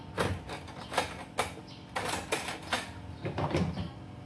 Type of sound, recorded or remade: recorded